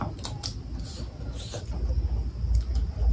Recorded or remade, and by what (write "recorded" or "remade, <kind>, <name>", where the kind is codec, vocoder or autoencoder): recorded